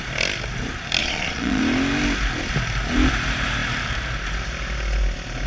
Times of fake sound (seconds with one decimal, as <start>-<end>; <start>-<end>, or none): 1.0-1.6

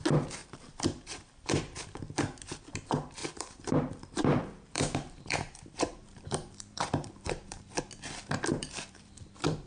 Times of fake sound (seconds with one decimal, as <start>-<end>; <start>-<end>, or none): 0.4-1.6; 3.2-7.8; 8.6-9.7

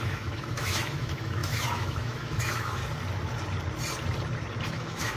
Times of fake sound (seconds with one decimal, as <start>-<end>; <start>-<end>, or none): 0.0-2.8; 4.7-5.2